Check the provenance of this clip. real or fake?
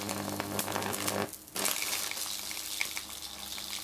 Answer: real